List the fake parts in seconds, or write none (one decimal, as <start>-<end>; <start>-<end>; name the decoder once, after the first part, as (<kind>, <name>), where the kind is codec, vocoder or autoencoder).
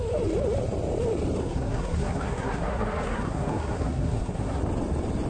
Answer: 1.4-4.6 (codec, SNAC)